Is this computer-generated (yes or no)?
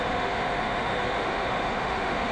yes